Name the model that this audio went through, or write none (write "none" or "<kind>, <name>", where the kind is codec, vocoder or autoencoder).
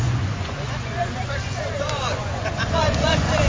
vocoder, Vocos